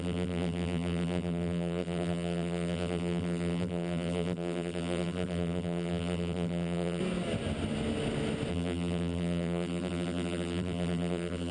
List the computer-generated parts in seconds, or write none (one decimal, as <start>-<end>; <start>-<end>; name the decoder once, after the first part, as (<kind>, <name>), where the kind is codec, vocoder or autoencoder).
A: 0.0-7.0 (vocoder, BigVGAN v2); 8.5-11.5

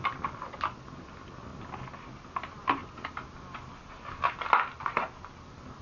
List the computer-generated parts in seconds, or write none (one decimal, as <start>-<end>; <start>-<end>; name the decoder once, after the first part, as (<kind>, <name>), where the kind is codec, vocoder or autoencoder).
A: none

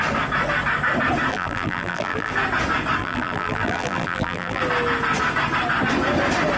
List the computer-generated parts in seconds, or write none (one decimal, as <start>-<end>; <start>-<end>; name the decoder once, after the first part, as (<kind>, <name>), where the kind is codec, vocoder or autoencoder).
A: 1.3-2.3 (vocoder, BigVGAN v2); 3.0-4.6

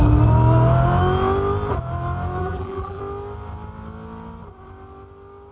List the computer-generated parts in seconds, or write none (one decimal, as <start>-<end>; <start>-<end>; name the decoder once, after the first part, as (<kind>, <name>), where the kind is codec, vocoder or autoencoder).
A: 2.4-3.0 (vocoder, BigVGAN v2)